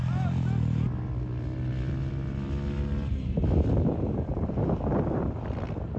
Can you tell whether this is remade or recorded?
recorded